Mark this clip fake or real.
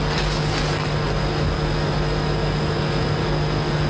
real